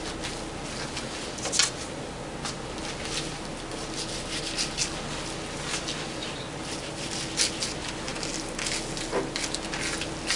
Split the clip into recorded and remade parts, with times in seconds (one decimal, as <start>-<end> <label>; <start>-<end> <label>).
0.0-10.4 recorded